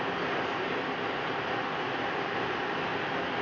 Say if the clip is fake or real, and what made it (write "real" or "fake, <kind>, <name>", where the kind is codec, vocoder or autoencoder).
real